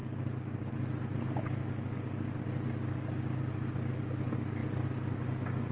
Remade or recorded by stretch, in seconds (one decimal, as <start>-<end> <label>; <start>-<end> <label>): 0.0-5.7 recorded